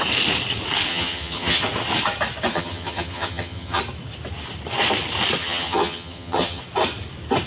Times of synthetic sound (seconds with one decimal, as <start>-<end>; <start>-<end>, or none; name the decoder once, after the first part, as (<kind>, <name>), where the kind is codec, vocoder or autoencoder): 0.9-1.6 (vocoder, HiFi-GAN); 2.5-3.8; 5.4-6.6